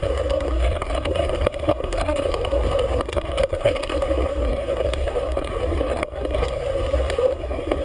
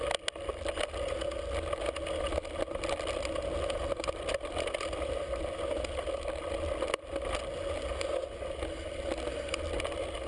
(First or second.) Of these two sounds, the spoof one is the first